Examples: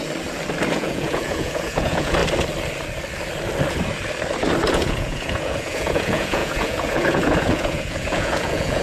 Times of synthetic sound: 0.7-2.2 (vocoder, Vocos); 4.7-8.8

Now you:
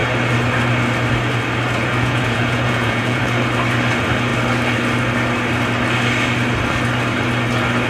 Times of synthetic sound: 1.8-3.2 (vocoder, Vocos)